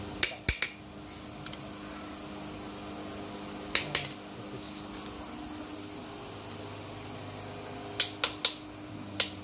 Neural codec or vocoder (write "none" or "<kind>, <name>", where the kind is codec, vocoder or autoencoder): none